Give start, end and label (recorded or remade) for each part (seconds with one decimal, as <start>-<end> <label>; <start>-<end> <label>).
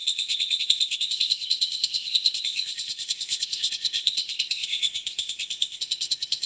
0.0-6.5 remade